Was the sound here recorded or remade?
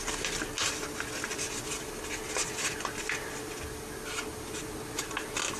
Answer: recorded